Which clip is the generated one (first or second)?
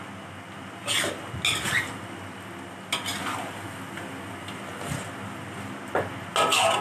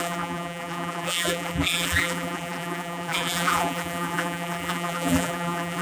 second